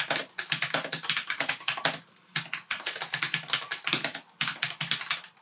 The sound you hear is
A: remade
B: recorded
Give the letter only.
B